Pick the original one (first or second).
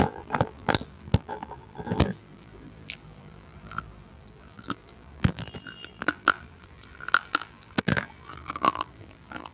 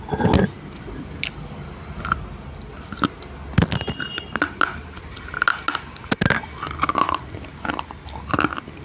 second